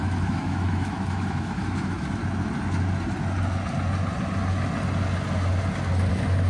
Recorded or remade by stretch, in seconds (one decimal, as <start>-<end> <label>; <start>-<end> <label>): 0.0-2.2 remade; 2.2-6.1 recorded; 6.1-6.5 remade